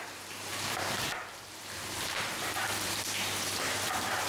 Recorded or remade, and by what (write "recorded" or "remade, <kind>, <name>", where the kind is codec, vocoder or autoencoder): remade, vocoder, BigVGAN v2